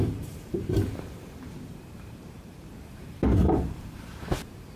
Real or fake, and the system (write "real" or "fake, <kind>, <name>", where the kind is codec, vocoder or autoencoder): fake, vocoder, BigVGAN v2